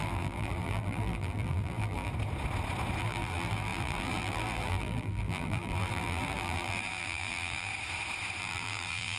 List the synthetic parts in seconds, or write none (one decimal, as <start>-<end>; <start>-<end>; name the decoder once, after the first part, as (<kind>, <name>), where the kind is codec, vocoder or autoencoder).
0.0-2.1 (vocoder, BigVGAN v2); 3.0-7.7; 8.4-9.2